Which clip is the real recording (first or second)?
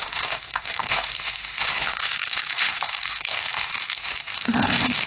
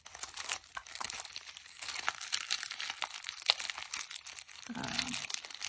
second